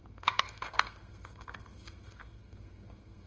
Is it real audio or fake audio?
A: fake